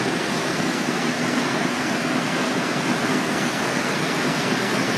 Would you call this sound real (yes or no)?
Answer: no